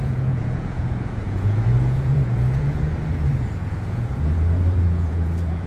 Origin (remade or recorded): remade